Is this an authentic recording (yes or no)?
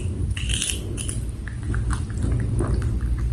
yes